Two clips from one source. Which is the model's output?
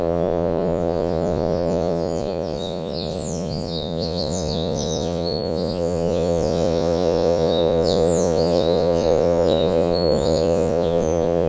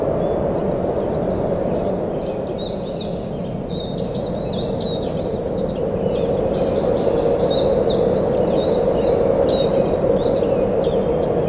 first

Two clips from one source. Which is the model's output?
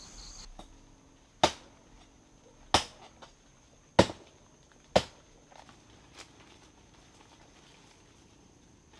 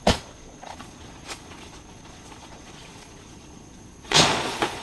second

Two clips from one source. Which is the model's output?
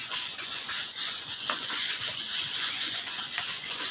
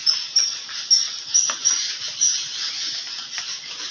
first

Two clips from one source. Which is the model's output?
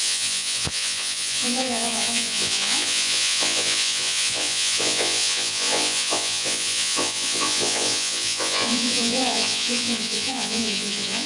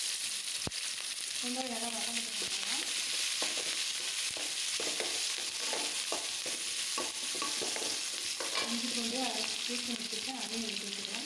first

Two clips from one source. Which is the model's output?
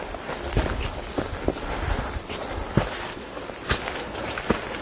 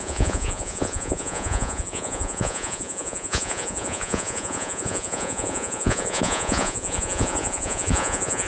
second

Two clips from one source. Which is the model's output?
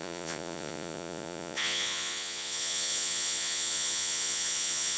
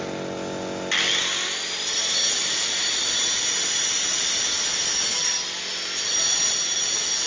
first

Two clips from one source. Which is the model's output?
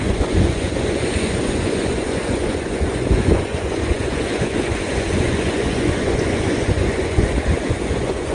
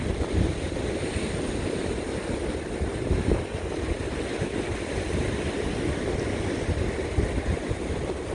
first